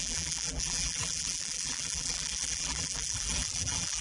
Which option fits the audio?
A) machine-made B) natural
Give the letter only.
A